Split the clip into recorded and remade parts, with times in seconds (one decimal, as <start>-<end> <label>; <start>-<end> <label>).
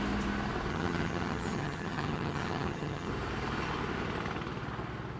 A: 0.0-0.7 recorded; 0.7-3.1 remade; 3.1-5.2 recorded